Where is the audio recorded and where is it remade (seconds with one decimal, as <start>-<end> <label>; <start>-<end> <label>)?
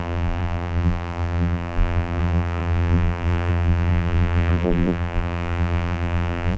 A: 0.0-6.6 remade